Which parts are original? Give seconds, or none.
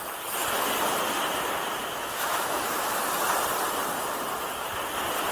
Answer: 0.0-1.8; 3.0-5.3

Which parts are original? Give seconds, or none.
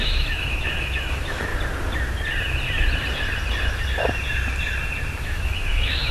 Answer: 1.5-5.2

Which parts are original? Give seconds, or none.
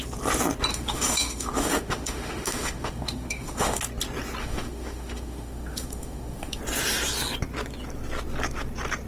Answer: 0.0-0.7; 3.8-4.4; 6.6-9.1